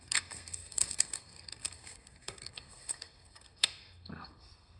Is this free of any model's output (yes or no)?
no